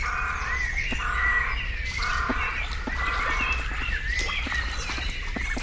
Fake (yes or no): no